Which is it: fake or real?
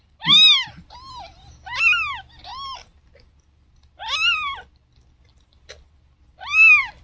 real